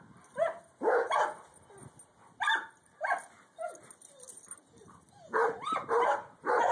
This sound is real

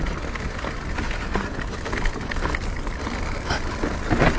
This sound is real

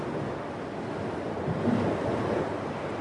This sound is real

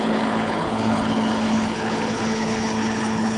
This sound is fake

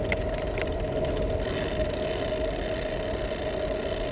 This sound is real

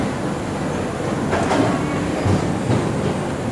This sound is real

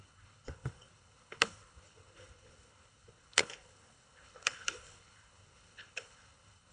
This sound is fake